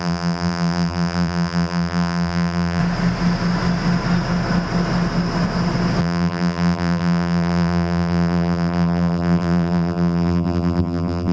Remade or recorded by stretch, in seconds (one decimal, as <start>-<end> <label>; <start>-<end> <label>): 0.0-2.8 remade; 2.8-6.0 recorded; 6.0-11.3 remade